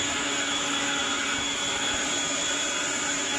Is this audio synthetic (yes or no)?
no